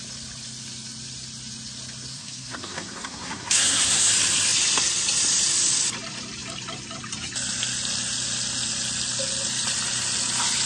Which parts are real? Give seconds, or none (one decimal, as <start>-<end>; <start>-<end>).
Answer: 0.0-2.1; 4.1-10.7